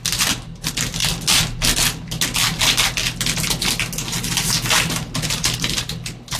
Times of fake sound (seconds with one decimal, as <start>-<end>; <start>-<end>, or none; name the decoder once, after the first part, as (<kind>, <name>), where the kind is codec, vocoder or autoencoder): none